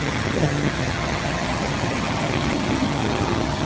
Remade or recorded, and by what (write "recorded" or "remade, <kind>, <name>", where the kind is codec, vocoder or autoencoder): remade, vocoder, HiFi-GAN